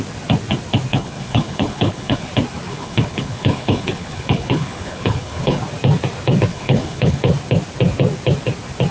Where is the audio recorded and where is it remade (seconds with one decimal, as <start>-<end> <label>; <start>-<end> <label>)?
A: 0.0-0.9 recorded; 0.9-2.3 remade; 2.3-2.7 recorded; 2.7-5.6 remade; 5.6-6.5 recorded; 6.5-7.2 remade; 7.2-8.9 recorded